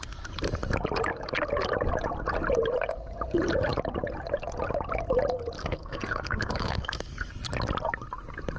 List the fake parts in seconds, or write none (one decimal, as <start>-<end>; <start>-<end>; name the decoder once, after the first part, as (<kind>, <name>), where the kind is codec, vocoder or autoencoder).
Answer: 5.6-7.3 (codec, SNAC)